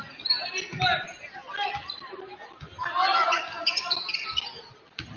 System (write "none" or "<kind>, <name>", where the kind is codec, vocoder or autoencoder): none